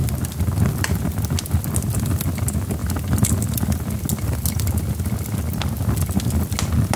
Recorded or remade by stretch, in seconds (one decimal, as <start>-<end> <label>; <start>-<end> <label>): 0.0-7.0 recorded